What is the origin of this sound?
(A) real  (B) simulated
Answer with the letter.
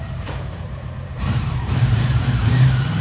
B